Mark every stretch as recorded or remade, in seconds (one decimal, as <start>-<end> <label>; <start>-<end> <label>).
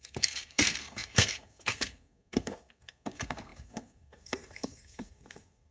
0.0-5.7 remade